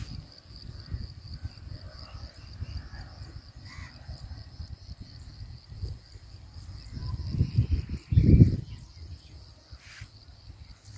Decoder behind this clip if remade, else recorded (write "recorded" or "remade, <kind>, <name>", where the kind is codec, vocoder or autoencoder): recorded